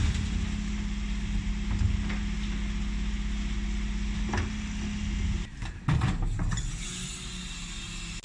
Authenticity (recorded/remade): recorded